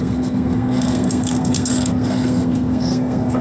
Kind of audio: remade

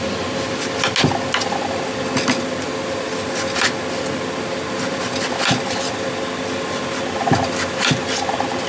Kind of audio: recorded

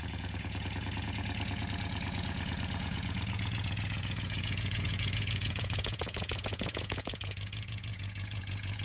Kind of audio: remade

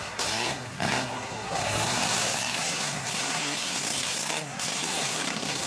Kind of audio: remade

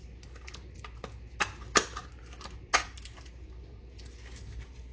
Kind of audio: recorded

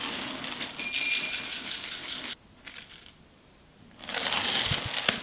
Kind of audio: recorded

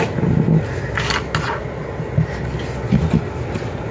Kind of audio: recorded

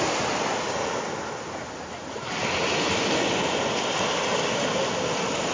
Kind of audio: recorded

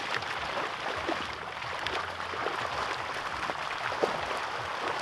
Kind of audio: recorded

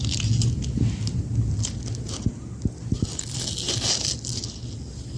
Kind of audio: recorded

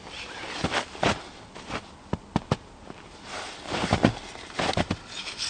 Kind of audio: recorded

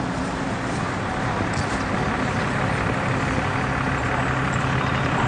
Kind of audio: recorded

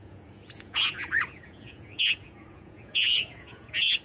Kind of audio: remade